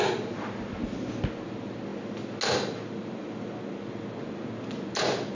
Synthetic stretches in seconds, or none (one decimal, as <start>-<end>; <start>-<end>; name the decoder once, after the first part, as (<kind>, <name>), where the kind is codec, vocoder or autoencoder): none